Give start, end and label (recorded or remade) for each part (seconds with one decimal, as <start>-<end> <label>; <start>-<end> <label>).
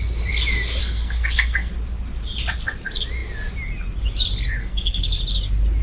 0.0-0.8 recorded; 0.8-1.7 remade; 1.7-4.6 recorded; 4.6-5.2 remade; 5.2-5.8 recorded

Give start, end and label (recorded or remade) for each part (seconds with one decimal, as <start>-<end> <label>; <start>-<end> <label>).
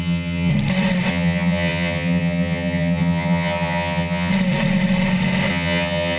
0.0-0.5 remade; 0.5-1.1 recorded; 1.1-4.3 remade; 4.3-5.5 recorded; 5.5-6.2 remade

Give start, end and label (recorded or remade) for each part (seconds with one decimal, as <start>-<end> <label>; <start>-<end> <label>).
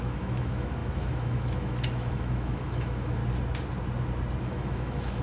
0.0-3.2 remade; 3.2-4.4 recorded; 4.4-5.2 remade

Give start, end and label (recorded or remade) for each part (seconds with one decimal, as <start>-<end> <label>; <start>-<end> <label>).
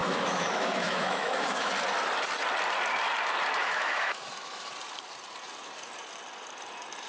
0.0-1.7 remade; 1.7-3.6 recorded; 3.6-4.7 remade; 4.7-7.1 recorded